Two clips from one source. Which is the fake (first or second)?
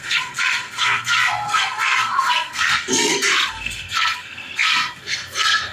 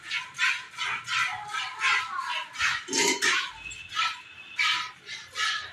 first